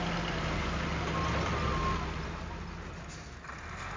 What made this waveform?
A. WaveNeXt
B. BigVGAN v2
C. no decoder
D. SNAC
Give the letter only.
C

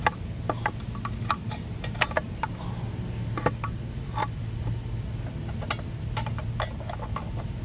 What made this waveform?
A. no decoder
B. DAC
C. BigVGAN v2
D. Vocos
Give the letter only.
A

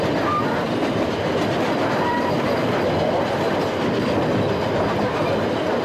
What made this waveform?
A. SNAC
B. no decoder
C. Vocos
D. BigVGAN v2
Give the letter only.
B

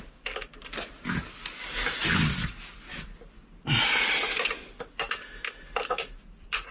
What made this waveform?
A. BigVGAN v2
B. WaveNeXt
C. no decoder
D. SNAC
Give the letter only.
A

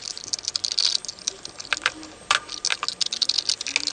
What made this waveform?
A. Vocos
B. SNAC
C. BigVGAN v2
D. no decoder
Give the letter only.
D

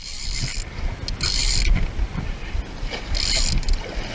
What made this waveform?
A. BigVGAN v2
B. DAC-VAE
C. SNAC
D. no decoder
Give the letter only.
D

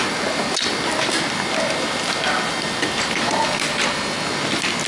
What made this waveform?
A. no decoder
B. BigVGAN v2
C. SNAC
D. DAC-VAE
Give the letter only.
A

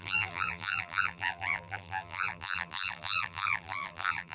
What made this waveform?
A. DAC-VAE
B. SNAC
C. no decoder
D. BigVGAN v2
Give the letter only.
D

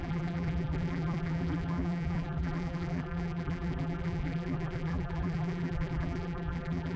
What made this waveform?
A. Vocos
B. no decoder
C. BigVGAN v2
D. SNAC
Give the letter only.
C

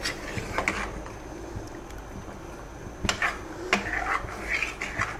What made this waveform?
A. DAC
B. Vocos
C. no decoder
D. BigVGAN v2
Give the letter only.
C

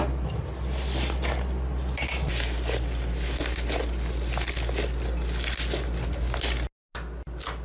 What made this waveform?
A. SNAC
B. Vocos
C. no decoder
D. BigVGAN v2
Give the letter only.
C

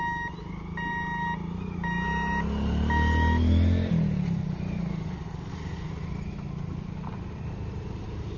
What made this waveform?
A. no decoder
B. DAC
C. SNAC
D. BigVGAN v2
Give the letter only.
A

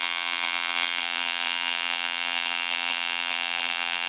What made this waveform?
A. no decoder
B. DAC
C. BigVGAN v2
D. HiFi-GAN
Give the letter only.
C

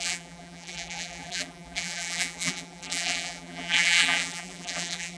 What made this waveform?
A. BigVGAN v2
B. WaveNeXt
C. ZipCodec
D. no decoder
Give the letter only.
A